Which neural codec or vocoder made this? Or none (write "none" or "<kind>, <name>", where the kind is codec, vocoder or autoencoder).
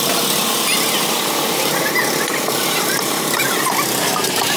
none